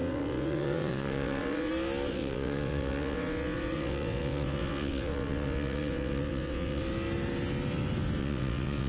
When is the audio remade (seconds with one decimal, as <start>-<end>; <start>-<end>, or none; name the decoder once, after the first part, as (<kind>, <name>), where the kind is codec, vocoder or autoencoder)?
0.0-1.7 (vocoder, WaveNeXt); 2.1-6.8; 8.2-8.9